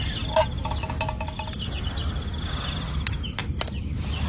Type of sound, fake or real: real